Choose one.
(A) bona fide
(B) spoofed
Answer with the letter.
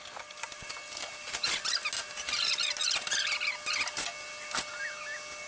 A